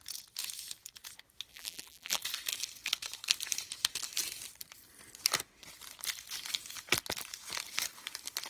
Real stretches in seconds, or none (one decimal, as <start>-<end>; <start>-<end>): 0.0-1.5; 2.2-8.5